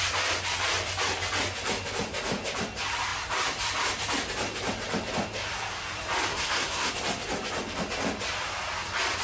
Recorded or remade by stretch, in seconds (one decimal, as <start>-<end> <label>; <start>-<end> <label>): 0.0-6.3 recorded; 6.3-6.9 remade; 6.9-9.2 recorded